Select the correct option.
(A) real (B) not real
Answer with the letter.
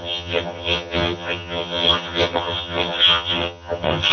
B